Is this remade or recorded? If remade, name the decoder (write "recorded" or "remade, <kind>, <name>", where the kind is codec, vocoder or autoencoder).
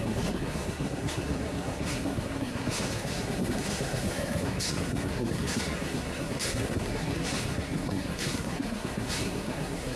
remade, codec, SNAC